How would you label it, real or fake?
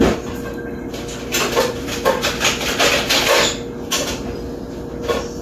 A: real